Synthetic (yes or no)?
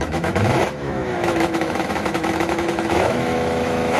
yes